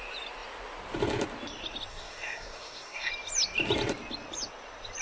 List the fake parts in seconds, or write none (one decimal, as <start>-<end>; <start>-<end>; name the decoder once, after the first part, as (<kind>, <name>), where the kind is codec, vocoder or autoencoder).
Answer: 1.9-3.1 (codec, SNAC)